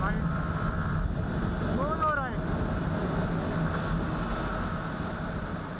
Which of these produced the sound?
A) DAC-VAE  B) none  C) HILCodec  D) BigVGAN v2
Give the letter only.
B